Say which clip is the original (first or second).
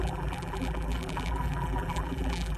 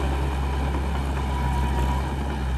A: second